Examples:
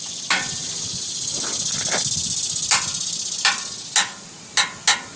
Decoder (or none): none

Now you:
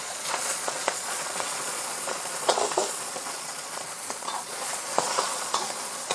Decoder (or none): vocoder, Vocos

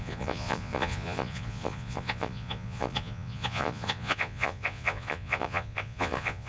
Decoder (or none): vocoder, Vocos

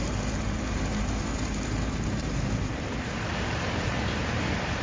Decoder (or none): vocoder, BigVGAN v2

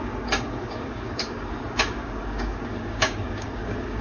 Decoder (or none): codec, DAC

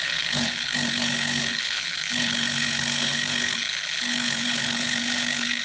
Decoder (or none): codec, HILCodec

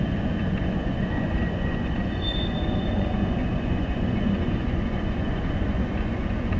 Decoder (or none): vocoder, Vocos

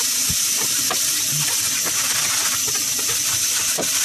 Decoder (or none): none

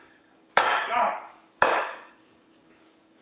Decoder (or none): codec, DAC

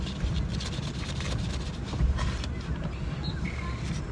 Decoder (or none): none